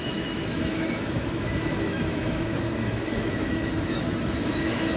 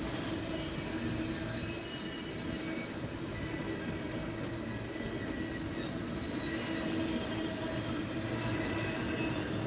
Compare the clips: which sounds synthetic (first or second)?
first